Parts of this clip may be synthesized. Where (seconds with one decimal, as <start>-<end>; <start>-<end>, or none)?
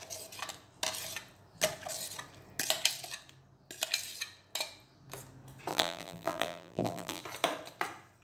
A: 5.7-7.2